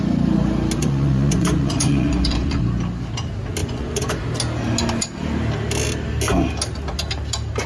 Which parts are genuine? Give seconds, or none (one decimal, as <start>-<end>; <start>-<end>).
0.0-0.8; 2.6-3.6; 4.1-7.7